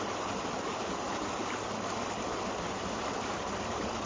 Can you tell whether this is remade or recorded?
recorded